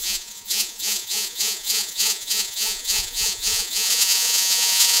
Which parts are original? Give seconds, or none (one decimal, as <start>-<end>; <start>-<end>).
none